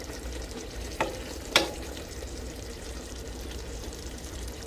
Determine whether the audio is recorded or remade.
remade